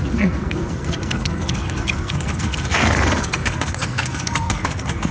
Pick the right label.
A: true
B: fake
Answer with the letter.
B